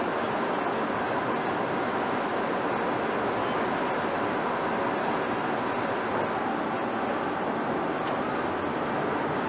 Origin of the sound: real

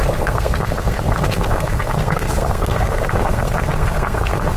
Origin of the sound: fake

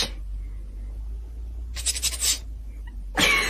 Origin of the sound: real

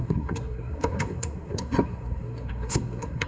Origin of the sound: fake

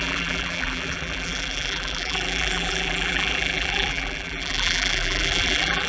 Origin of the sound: fake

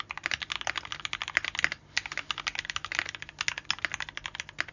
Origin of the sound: real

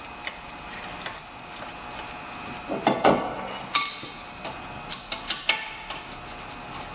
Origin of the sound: real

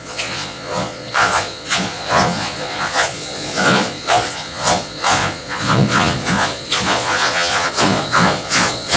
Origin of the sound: fake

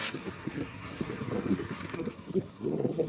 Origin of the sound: fake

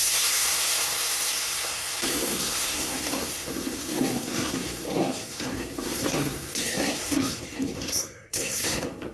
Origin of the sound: fake